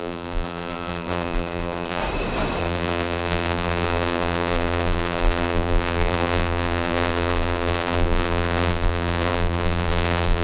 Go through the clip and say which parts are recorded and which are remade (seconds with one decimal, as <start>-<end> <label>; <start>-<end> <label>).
0.0-2.0 remade; 2.0-2.6 recorded; 2.6-10.4 remade